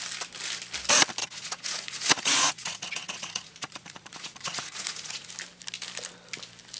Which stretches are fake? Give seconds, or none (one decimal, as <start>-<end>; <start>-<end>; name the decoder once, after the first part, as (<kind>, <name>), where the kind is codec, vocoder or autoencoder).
1.2-5.3 (vocoder, Vocos)